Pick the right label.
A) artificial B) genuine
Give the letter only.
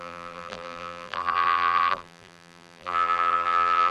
A